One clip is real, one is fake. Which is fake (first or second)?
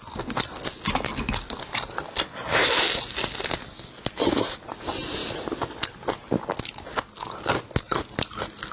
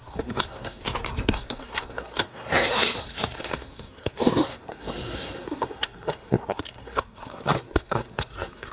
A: second